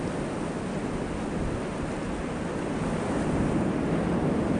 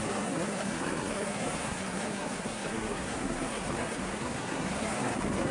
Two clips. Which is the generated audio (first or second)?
second